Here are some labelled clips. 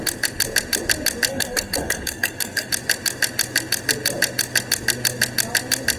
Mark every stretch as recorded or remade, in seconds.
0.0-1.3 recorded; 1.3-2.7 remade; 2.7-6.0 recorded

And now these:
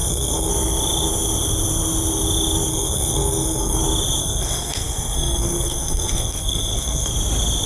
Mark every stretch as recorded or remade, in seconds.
0.0-0.5 remade; 0.5-2.7 recorded; 2.7-3.8 remade; 3.8-4.2 recorded; 4.2-7.1 remade; 7.1-7.7 recorded

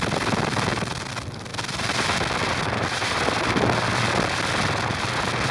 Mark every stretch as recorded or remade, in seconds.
0.0-5.5 recorded